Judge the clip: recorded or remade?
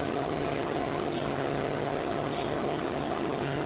remade